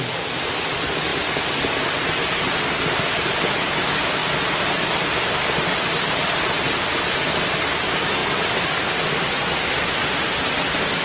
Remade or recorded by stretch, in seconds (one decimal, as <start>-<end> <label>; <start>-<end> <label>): 0.0-1.1 remade; 1.1-1.6 recorded; 1.6-4.2 remade; 4.2-4.9 recorded; 4.9-8.2 remade; 8.2-11.0 recorded